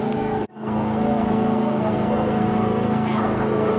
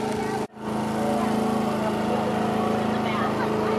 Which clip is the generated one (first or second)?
first